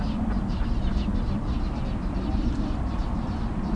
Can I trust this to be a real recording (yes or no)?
yes